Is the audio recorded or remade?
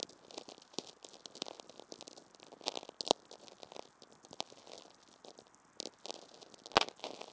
recorded